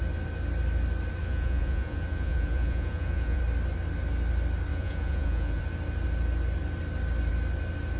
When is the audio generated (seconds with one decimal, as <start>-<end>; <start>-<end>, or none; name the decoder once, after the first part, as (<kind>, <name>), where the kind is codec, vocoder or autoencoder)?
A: 1.2-3.4 (vocoder, Vocos); 4.7-5.6